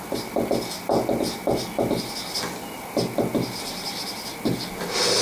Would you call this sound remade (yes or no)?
no